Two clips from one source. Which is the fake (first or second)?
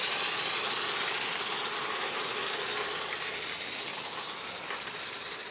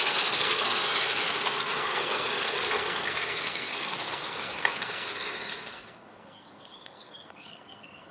second